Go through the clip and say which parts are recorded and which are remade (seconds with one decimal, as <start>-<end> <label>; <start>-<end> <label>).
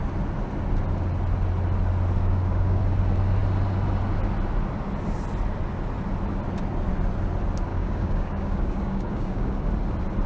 0.0-2.2 recorded; 2.2-2.8 remade; 2.8-7.7 recorded; 7.7-9.7 remade; 9.7-10.3 recorded